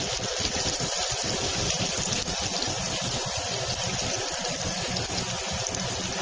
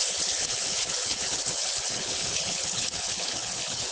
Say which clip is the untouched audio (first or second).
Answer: first